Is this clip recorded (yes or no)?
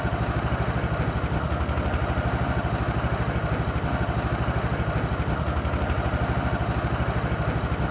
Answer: yes